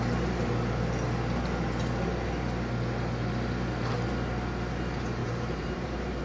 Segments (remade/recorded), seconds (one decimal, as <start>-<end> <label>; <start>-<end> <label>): 0.0-5.2 recorded; 5.2-6.2 remade